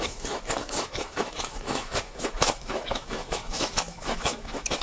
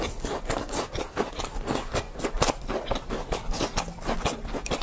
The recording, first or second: second